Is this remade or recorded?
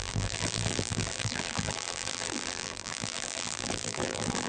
remade